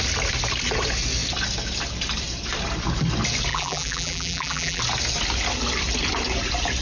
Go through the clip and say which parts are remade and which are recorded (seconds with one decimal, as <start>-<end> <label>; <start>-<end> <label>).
0.0-3.5 recorded; 3.5-4.8 remade; 4.8-6.8 recorded